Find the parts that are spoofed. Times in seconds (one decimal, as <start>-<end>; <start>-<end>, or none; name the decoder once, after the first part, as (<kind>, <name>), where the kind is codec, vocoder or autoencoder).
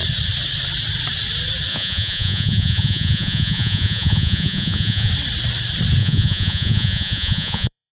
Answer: 1.7-5.1 (vocoder, Vocos); 6.0-7.9